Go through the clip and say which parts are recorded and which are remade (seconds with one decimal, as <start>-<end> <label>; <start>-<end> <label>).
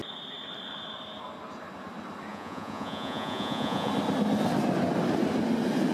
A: 0.0-2.3 recorded; 2.3-3.9 remade; 3.9-5.9 recorded